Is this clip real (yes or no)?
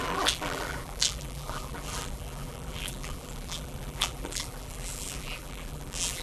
no